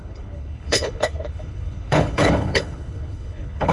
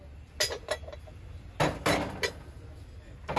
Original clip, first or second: second